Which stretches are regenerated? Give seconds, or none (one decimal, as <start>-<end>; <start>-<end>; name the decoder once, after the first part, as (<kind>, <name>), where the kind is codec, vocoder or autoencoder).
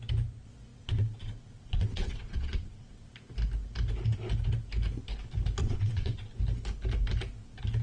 0.7-3.1 (vocoder, WaveNeXt); 5.6-6.3